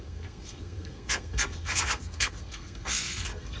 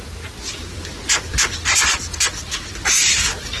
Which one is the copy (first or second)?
first